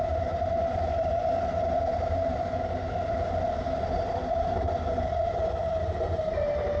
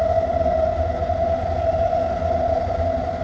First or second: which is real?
second